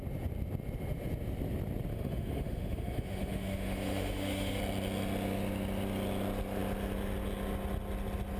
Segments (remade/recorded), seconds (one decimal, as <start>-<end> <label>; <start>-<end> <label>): 0.0-1.9 recorded; 1.9-4.6 remade; 4.6-8.4 recorded